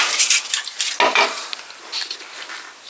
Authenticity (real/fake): real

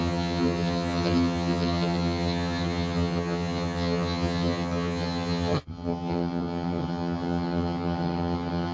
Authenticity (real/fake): fake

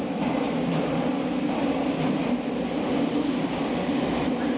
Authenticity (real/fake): real